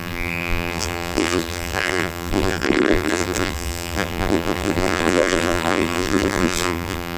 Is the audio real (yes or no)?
no